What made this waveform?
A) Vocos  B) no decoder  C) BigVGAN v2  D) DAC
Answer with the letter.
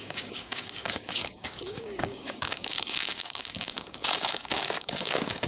D